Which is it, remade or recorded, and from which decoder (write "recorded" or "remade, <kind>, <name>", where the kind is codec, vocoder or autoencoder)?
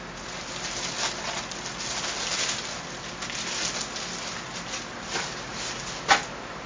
recorded